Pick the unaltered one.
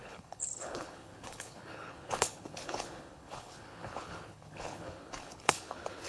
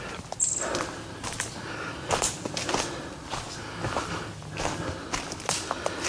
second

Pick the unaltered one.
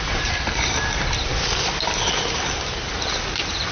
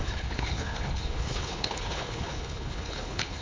first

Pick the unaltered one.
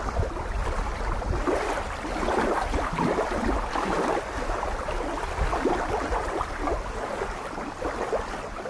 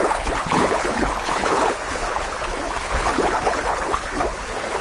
first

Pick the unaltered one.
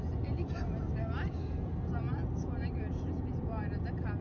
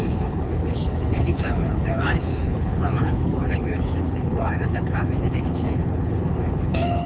first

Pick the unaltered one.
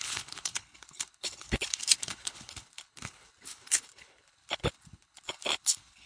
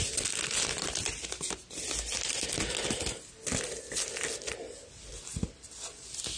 second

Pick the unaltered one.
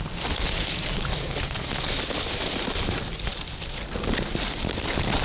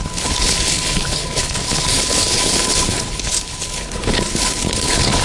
first